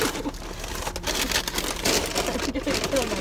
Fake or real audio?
real